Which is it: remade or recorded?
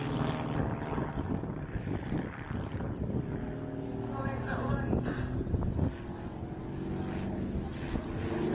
recorded